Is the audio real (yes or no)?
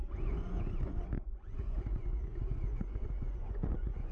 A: no